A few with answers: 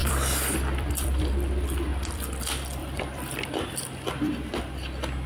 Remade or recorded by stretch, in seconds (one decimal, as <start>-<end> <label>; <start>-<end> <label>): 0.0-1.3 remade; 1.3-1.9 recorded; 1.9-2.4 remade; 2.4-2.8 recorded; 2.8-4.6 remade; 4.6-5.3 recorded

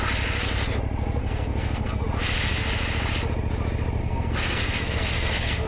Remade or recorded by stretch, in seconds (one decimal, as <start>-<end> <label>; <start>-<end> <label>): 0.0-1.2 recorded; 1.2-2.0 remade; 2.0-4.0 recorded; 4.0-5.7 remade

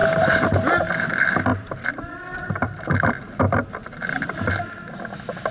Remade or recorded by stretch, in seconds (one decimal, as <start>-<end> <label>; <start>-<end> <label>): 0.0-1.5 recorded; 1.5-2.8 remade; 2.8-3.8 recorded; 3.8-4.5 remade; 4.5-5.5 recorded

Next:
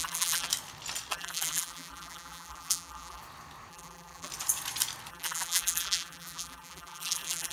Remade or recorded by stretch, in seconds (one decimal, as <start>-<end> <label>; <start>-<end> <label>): 0.0-0.5 remade; 0.5-1.1 recorded; 1.1-3.2 remade; 3.2-3.7 recorded; 3.7-4.3 remade; 4.3-5.1 recorded; 5.1-7.5 remade

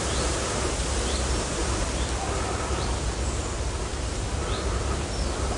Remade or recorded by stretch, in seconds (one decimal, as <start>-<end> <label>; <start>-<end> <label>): 0.0-5.6 recorded

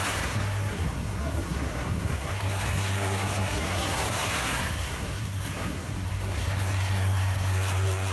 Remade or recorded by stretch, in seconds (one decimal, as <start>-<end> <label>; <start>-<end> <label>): 0.0-8.1 remade

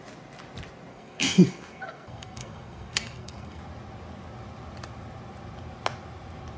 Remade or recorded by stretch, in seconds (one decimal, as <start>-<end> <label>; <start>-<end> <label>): 0.0-0.9 recorded; 0.9-3.6 remade; 3.6-6.6 recorded

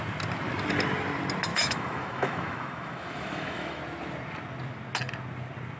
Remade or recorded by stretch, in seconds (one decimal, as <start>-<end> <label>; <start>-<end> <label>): 0.0-1.5 recorded; 1.5-3.8 remade; 3.8-5.8 recorded